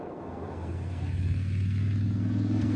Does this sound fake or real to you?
fake